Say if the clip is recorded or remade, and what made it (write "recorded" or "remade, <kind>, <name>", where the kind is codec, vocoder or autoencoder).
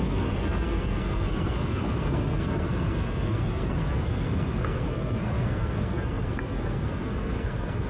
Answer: remade, codec, SNAC